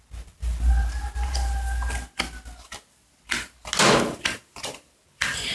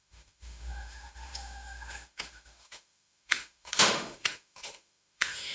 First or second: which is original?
first